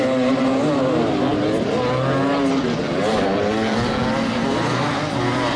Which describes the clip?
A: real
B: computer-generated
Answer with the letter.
A